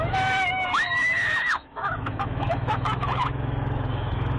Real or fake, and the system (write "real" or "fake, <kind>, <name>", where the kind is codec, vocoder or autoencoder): fake, autoencoder, DAC-VAE